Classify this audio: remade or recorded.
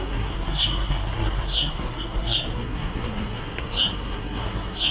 remade